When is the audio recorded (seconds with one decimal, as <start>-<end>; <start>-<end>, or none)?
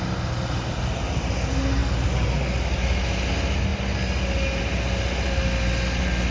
0.0-6.3